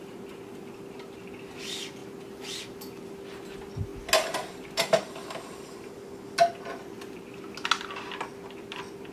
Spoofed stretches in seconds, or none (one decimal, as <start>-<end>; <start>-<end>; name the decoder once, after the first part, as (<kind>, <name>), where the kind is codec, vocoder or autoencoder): none